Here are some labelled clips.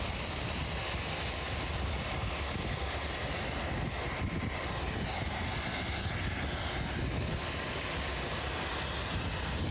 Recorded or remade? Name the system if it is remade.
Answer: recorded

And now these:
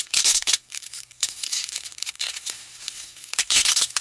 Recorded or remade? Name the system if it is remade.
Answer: remade, codec, SNAC